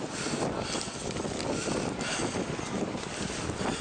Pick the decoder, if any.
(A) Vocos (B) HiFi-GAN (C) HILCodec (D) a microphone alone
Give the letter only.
D